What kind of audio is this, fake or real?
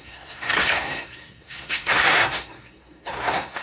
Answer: fake